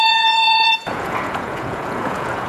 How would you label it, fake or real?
fake